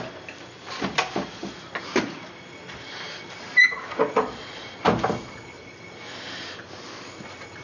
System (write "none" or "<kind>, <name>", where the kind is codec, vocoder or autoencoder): none